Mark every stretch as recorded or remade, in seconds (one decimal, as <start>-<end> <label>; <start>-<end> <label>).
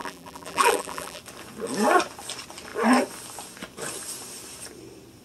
0.0-1.2 remade; 1.2-5.2 recorded